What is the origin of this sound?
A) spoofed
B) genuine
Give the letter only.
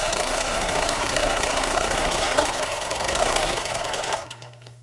A